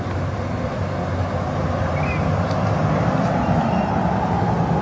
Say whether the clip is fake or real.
real